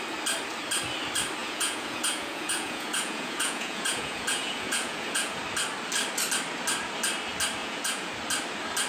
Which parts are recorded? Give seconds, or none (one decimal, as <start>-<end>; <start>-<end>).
0.0-1.4; 5.4-7.6; 8.1-8.9